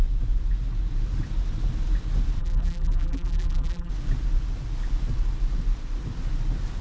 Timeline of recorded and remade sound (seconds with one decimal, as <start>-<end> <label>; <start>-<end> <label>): 0.0-2.4 recorded; 2.4-3.9 remade; 3.9-6.8 recorded